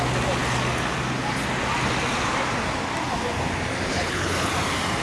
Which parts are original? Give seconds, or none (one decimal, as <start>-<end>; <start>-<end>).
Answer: 0.0-3.9; 4.5-5.0